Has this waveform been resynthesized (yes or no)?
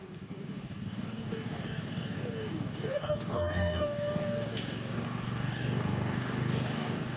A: yes